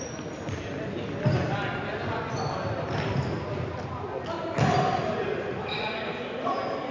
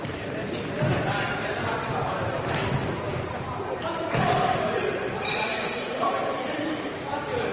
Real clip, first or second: first